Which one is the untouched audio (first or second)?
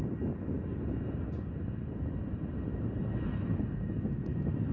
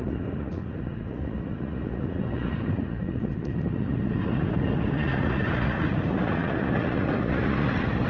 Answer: first